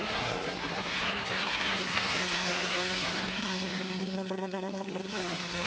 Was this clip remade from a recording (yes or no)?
yes